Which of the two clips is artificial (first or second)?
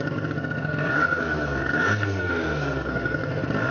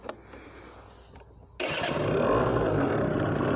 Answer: first